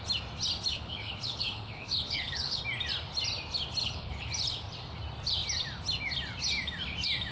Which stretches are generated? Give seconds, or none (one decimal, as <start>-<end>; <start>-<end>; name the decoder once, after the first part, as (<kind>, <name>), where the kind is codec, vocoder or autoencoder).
0.7-2.6 (codec, HILCodec); 3.8-4.3